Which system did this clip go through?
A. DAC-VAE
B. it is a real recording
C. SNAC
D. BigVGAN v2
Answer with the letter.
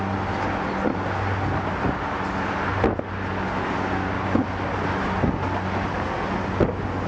B